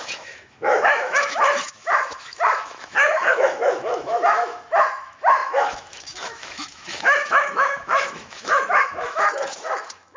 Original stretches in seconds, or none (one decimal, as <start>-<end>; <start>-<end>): none